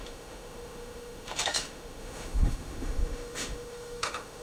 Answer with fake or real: fake